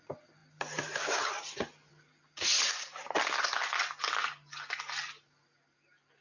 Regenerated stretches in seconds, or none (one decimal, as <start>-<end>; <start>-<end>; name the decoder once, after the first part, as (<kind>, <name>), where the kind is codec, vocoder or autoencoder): none

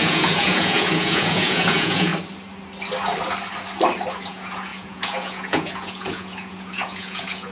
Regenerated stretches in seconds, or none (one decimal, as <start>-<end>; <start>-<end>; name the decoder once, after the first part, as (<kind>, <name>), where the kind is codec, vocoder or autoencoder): 0.0-2.1 (vocoder, Vocos); 4.1-7.5

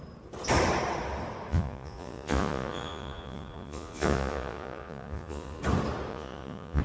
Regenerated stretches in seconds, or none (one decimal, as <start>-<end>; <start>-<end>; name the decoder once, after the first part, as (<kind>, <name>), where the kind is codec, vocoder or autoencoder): 1.5-5.6 (vocoder, Vocos); 6.1-6.8

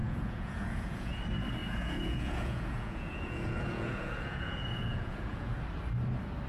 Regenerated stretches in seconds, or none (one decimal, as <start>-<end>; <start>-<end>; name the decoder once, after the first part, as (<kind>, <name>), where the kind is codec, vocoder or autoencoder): 0.0-1.2 (vocoder, Vocos); 1.6-5.5

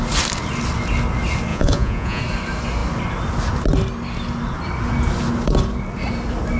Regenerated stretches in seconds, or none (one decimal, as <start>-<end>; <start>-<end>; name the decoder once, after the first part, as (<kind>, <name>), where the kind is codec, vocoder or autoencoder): 1.5-2.2 (vocoder, Vocos)

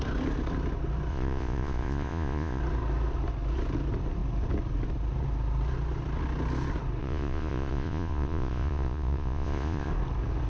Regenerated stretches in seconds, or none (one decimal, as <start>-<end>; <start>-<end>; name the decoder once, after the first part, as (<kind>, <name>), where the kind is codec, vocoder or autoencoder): 1.1-2.6 (vocoder, Vocos); 7.0-9.9

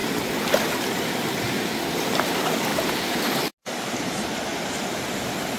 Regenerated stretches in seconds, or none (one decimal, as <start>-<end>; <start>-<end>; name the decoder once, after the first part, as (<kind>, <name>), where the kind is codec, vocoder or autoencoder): 2.7-3.2 (vocoder, Vocos)